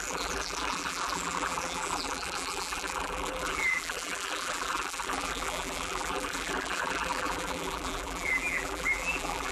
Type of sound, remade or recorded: remade